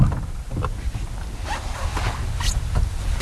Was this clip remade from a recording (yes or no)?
no